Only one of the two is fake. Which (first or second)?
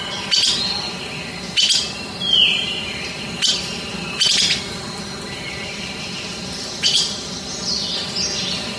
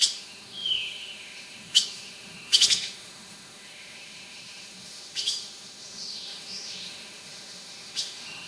second